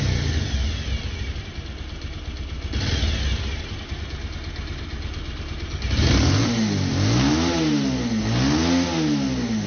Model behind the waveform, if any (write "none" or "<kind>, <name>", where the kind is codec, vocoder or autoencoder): none